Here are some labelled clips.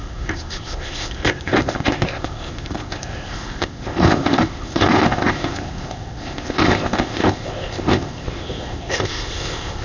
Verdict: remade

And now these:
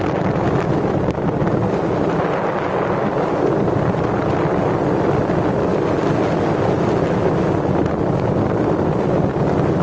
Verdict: recorded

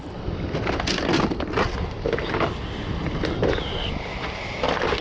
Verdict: recorded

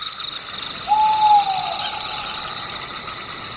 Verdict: recorded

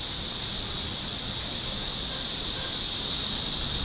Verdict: recorded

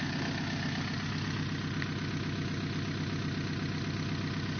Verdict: recorded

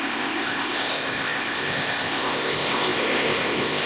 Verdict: remade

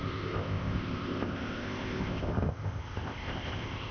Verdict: remade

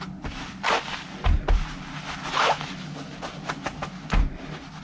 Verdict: recorded